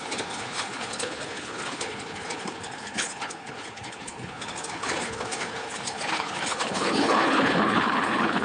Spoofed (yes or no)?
yes